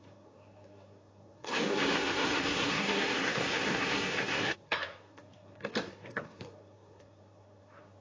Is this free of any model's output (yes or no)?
no